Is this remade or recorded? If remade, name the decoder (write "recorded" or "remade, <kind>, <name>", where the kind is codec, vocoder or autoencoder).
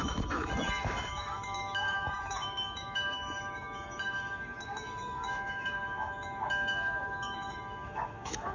remade, autoencoder, DAC-VAE